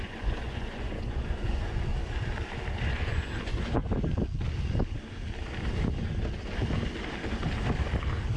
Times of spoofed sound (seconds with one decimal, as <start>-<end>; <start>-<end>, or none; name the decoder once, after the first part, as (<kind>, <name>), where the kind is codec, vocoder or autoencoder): 0.0-1.9 (vocoder, Vocos); 2.8-3.8